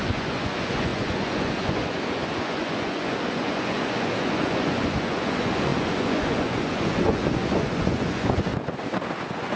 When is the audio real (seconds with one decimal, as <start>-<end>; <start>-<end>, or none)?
8.5-9.2